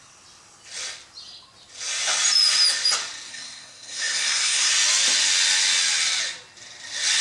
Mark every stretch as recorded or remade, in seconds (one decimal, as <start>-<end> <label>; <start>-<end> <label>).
0.0-3.3 recorded; 3.3-4.7 remade; 4.7-7.2 recorded

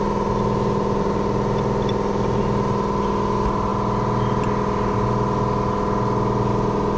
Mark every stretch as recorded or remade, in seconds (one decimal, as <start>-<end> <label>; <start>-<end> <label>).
0.0-7.0 recorded

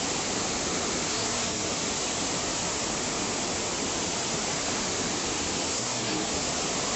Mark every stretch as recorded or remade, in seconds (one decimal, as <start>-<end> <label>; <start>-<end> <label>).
0.0-1.1 recorded; 1.1-1.7 remade; 1.7-5.7 recorded; 5.7-6.3 remade; 6.3-7.0 recorded

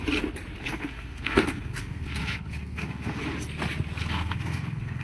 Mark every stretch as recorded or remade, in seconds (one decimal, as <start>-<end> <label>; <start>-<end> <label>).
0.0-0.6 recorded; 0.6-3.2 remade; 3.2-4.0 recorded; 4.0-5.0 remade

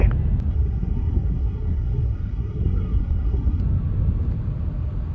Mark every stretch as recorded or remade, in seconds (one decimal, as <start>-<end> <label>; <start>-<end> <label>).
0.0-0.5 recorded; 0.5-3.6 remade; 3.6-5.1 recorded

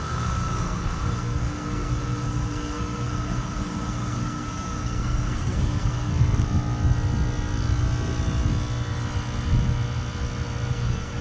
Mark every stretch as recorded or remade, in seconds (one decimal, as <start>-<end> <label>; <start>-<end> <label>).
0.0-6.1 remade; 6.1-10.7 recorded; 10.7-11.2 remade

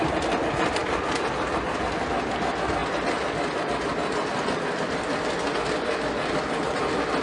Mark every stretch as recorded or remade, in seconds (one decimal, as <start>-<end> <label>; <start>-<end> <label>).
0.0-7.2 recorded

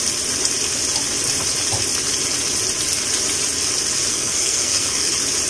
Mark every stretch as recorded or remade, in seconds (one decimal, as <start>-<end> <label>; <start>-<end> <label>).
0.0-4.1 recorded; 4.1-5.1 remade; 5.1-5.5 recorded